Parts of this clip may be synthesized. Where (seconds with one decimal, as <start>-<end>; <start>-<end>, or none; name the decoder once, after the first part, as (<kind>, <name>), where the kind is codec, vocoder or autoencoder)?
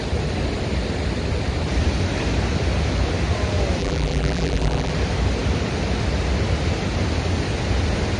3.8-4.9 (vocoder, BigVGAN v2)